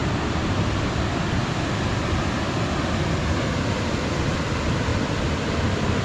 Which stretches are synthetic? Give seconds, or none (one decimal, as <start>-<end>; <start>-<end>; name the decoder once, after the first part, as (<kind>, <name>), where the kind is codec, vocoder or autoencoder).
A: 0.0-0.7 (vocoder, BigVGAN v2)